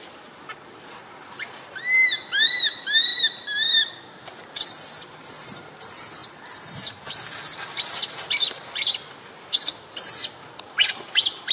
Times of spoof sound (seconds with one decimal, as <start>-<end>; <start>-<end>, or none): 6.2-7.1